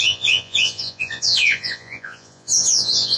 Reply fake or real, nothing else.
fake